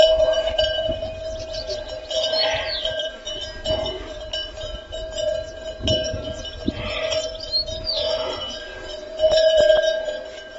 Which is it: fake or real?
real